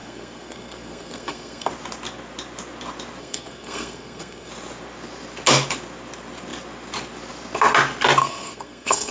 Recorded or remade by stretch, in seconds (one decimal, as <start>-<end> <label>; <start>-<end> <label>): 0.0-1.7 remade; 1.7-3.2 recorded; 3.2-4.5 remade; 4.5-8.2 recorded; 8.2-9.1 remade